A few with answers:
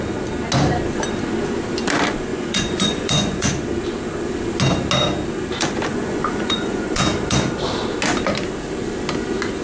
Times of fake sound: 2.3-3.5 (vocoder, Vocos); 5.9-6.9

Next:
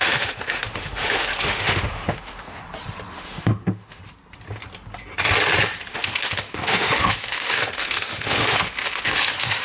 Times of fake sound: 0.0-2.6 (autoencoder, DAC-VAE); 3.1-4.0; 5.9-9.6